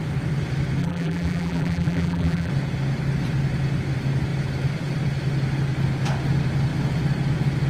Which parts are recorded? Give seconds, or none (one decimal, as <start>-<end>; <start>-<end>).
0.0-0.8; 2.5-7.7